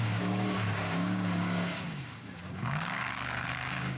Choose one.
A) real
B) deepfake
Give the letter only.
B